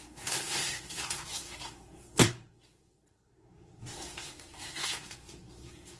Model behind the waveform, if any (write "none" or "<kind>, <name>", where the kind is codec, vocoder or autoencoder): codec, SNAC